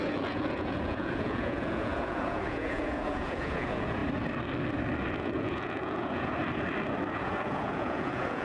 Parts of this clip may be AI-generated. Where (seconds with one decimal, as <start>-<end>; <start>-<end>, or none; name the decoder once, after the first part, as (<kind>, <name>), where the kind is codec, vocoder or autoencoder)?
0.0-4.0 (vocoder, Vocos); 5.2-6.4; 7.1-8.4